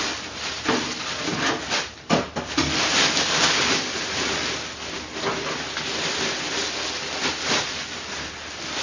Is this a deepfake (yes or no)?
yes